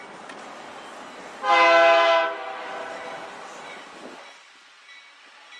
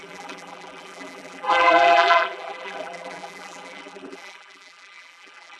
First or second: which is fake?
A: second